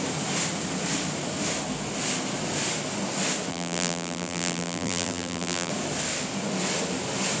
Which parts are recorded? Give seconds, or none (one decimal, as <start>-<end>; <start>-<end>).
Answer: 0.0-3.5; 5.7-7.4